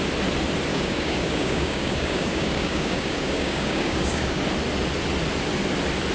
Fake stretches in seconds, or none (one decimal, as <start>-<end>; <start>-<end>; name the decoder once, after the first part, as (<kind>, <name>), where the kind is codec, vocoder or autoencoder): 0.7-4.4 (codec, DAC)